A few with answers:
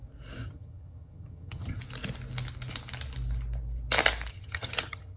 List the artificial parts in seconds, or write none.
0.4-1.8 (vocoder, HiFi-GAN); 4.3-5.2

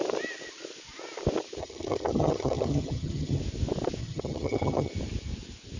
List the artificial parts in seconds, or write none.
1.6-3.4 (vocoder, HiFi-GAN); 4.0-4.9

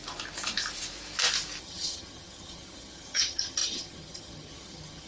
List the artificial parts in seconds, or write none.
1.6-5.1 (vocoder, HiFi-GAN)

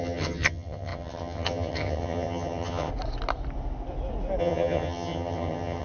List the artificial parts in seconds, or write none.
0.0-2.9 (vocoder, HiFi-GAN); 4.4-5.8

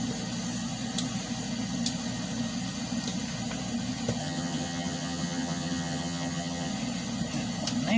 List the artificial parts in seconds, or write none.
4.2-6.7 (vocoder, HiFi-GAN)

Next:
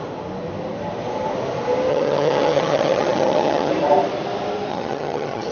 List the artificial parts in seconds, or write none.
1.9-3.7 (vocoder, HiFi-GAN); 4.7-5.5

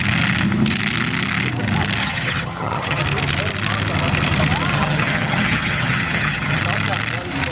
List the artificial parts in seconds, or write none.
2.0-3.0 (vocoder, HiFi-GAN); 4.7-6.6